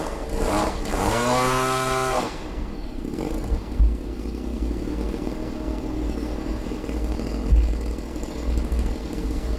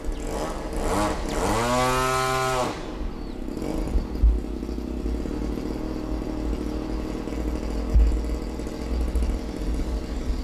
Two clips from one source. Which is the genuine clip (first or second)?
second